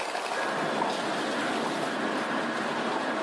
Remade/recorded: recorded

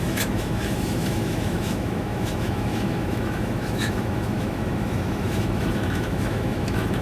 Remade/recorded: remade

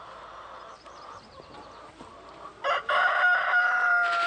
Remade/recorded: remade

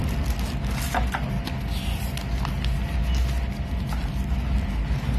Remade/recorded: recorded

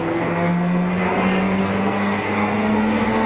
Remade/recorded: remade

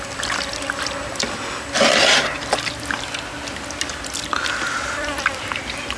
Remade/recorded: recorded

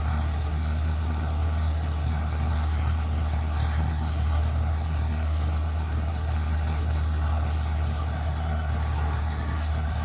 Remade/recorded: remade